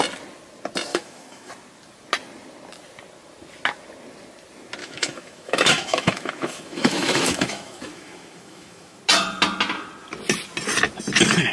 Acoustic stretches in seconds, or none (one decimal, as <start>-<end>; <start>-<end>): 0.0-0.9; 1.5-4.8; 9.0-11.5